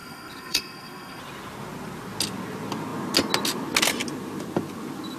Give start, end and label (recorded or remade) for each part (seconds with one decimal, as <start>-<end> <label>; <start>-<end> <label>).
0.0-1.2 remade; 1.2-5.2 recorded